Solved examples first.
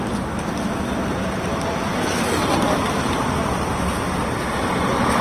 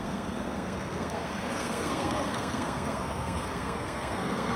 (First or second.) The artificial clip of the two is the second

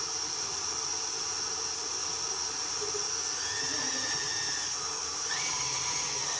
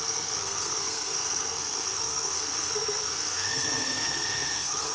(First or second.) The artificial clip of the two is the second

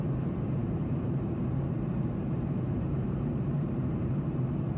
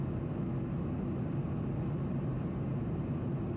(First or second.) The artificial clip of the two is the first